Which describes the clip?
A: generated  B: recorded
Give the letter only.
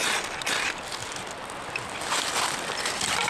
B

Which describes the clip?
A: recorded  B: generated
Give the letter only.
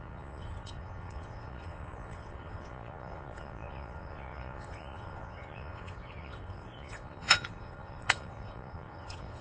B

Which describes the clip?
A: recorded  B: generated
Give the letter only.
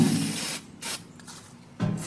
A